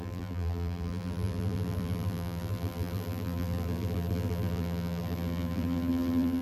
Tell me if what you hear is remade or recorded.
remade